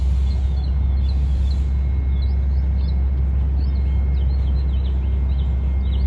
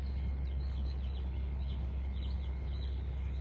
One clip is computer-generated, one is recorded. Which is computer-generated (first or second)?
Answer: second